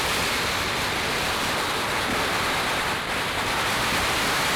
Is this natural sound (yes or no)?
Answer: yes